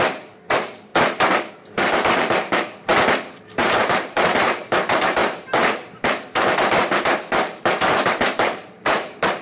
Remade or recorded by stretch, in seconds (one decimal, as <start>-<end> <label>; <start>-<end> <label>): 0.0-0.9 remade; 0.9-1.5 recorded; 1.5-2.9 remade; 2.9-3.4 recorded; 3.4-9.4 remade